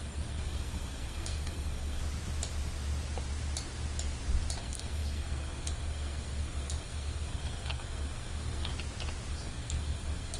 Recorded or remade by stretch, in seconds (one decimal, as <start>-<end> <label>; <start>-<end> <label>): 0.0-2.0 remade; 2.0-4.6 recorded; 4.6-8.7 remade; 8.7-9.3 recorded; 9.3-10.4 remade